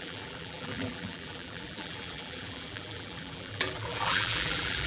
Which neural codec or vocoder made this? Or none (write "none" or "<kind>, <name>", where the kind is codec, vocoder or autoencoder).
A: vocoder, BigVGAN v2